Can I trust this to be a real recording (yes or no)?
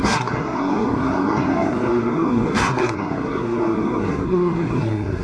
no